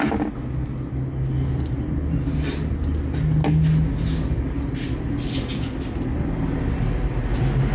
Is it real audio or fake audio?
real